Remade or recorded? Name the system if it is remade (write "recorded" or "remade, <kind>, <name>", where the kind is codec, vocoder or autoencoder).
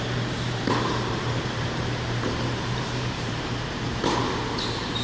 remade, vocoder, BigVGAN v2